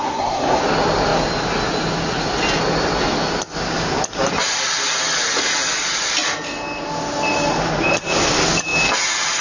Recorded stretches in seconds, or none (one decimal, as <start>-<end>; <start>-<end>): 0.6-9.4